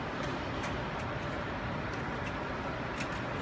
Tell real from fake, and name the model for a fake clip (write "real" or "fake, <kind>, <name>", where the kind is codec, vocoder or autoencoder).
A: real